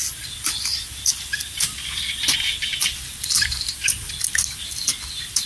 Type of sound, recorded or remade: recorded